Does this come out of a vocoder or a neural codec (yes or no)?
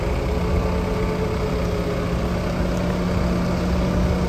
no